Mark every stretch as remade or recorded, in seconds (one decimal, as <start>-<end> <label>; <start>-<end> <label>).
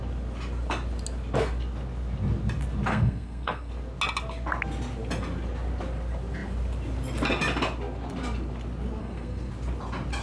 0.0-2.9 recorded; 2.9-3.7 remade; 3.7-9.0 recorded; 9.0-9.5 remade; 9.5-10.2 recorded